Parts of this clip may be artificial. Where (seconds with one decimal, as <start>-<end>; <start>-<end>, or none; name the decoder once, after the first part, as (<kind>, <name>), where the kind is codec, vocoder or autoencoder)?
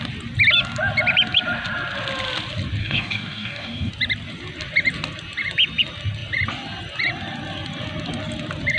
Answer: 2.8-3.9 (codec, DAC)